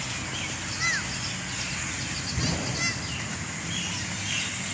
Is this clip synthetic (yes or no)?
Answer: no